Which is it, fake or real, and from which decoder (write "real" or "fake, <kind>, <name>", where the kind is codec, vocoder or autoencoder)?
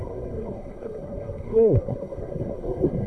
fake, codec, SNAC